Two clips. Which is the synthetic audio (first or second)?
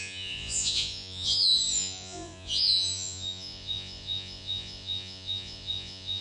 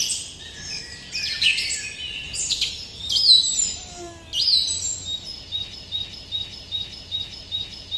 first